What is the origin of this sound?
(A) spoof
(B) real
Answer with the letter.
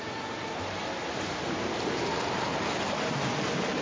B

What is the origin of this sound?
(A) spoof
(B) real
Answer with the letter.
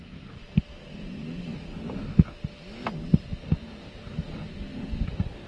B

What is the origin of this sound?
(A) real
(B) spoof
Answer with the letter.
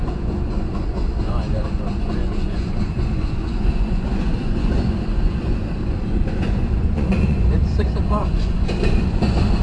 B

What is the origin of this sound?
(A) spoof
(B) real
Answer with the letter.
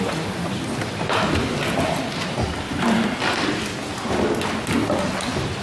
B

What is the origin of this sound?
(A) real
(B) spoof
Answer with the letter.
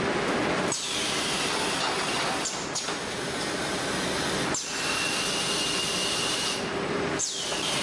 A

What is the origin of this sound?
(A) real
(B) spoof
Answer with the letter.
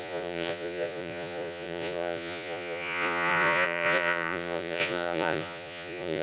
B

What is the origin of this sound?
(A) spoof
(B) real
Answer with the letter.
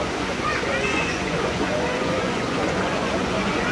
A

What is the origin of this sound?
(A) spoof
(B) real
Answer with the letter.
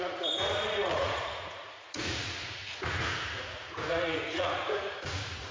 A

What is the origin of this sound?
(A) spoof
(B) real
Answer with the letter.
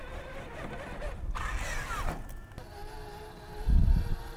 B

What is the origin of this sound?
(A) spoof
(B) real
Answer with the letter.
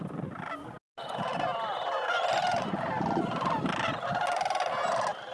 B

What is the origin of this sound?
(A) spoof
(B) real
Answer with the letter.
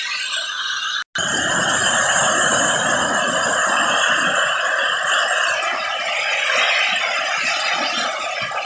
B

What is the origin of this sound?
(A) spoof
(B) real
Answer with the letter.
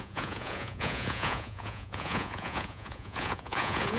A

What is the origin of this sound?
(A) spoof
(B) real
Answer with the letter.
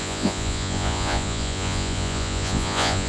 A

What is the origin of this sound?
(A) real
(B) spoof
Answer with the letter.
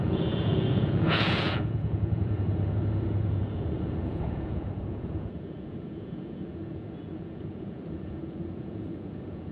B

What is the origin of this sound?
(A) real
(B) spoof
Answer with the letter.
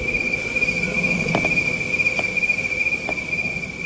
A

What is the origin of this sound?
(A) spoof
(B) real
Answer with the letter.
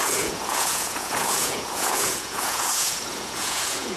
A